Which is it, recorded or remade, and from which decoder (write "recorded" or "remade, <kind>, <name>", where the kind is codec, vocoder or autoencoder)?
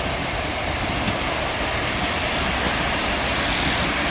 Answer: recorded